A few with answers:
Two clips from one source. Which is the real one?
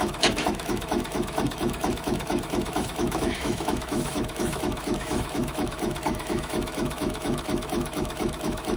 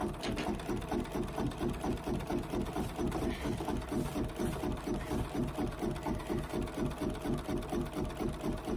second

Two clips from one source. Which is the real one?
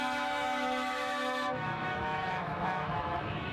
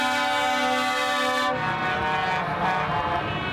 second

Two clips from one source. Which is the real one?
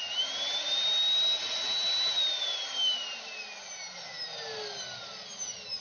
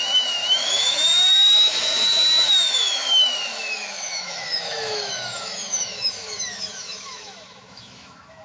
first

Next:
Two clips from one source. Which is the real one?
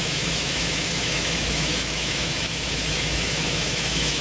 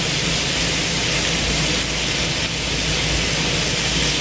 second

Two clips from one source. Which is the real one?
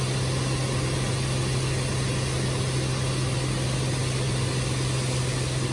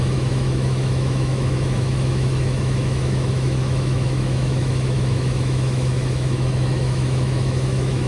first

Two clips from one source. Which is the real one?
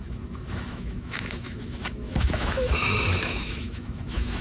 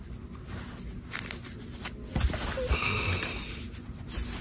second